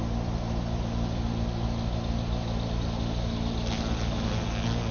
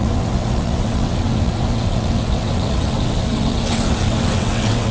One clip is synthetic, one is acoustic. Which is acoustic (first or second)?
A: first